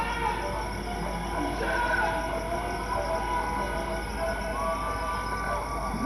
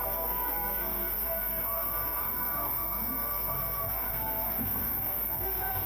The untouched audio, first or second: first